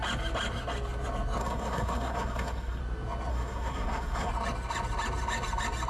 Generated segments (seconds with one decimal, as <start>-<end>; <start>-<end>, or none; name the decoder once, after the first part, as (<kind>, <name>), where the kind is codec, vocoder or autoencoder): 1.4-2.8 (codec, SNAC); 3.3-4.3

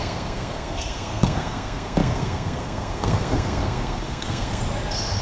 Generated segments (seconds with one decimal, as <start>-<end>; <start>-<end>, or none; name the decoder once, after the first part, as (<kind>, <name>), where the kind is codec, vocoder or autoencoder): 0.0-4.6 (codec, SNAC)